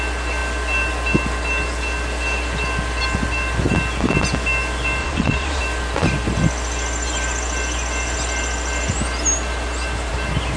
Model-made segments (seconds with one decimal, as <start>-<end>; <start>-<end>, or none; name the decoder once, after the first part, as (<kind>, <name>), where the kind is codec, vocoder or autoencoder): 5.0-5.6 (vocoder, Vocos)

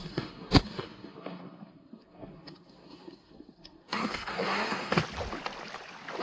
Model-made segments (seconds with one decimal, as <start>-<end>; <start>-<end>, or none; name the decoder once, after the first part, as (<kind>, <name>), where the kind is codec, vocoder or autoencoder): 0.0-5.0 (codec, SNAC)

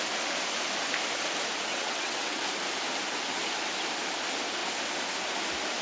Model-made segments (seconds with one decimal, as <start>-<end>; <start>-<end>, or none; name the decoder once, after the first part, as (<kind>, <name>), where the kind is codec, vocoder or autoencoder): 1.7-2.4 (vocoder, WaveNeXt)

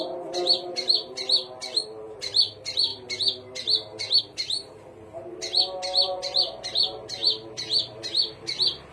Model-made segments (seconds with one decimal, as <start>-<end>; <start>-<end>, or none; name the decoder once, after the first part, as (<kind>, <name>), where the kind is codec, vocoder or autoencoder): none

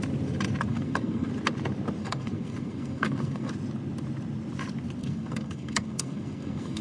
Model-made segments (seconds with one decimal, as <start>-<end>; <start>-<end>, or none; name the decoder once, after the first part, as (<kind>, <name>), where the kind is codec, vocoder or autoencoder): 0.7-1.3 (codec, SNAC); 2.0-3.5; 5.0-6.8

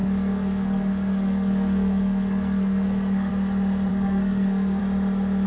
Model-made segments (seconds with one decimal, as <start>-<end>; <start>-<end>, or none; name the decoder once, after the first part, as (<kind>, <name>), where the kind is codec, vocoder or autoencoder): 0.0-3.3 (codec, SNAC); 3.9-4.8

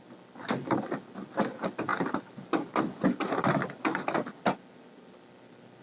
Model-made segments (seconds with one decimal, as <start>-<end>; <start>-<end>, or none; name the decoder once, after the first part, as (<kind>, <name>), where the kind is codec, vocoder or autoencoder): none